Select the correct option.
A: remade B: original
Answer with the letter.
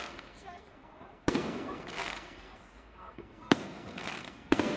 A